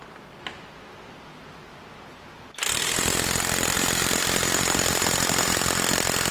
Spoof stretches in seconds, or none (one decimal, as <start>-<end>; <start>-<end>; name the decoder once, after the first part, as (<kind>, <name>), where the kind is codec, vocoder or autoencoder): none